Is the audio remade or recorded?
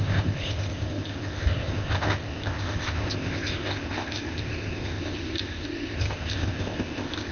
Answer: remade